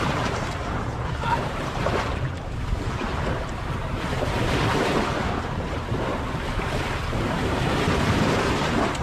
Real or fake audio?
fake